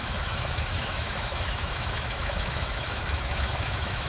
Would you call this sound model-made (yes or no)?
yes